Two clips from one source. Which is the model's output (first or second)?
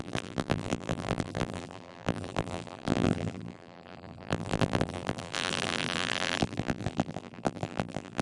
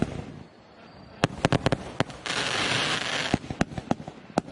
first